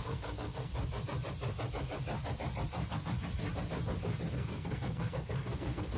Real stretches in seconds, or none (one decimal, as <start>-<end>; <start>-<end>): 0.7-4.3